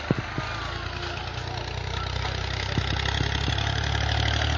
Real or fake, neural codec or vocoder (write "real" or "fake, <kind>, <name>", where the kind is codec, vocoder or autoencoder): real